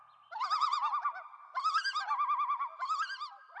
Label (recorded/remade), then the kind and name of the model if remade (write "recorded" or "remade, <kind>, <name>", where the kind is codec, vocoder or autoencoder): recorded